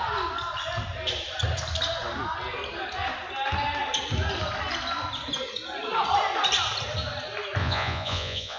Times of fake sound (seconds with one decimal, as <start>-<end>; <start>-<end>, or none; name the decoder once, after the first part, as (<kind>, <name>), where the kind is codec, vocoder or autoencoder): 7.6-8.6 (vocoder, Vocos)